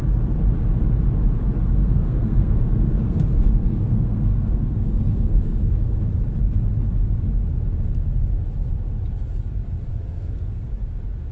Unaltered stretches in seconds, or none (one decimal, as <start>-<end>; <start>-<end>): 0.0-1.6; 6.0-9.9; 10.7-11.3